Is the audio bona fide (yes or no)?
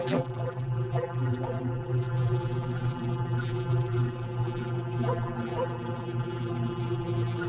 no